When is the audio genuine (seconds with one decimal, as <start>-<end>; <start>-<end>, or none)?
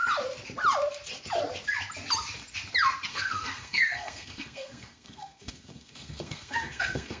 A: 0.0-3.1